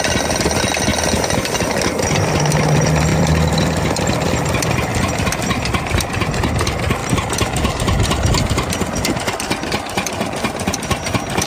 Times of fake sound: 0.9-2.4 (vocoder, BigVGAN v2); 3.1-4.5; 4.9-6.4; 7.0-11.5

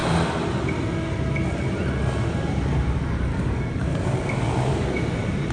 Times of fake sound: 3.3-5.0 (codec, DAC)

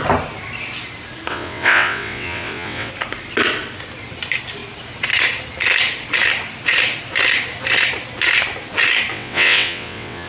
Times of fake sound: 1.3-2.9 (vocoder, WaveNeXt); 9.1-10.3

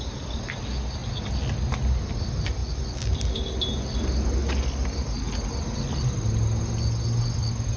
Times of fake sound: none

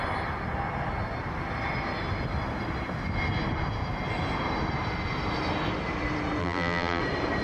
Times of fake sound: 6.4-7.0 (vocoder, BigVGAN v2)